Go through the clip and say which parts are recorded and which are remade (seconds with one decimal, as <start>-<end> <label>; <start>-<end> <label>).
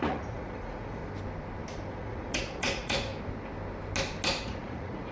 0.0-1.0 remade; 1.0-1.9 recorded; 1.9-3.1 remade; 3.1-4.4 recorded; 4.4-5.1 remade